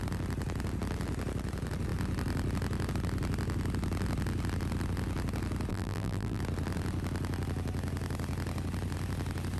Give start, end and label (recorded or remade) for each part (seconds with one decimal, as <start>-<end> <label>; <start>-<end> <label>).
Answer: 0.0-5.7 recorded; 5.7-6.4 remade; 6.4-9.6 recorded